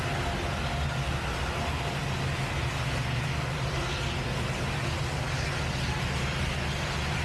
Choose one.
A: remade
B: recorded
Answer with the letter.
B